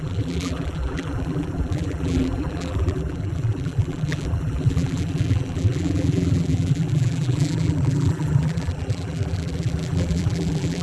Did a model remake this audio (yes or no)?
yes